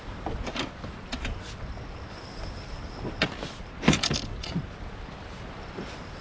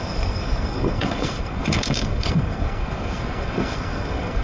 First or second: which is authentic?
first